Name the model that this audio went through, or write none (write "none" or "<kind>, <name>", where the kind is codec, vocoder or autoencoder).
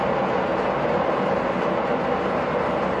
none